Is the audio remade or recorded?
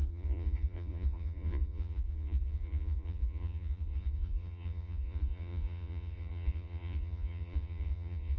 remade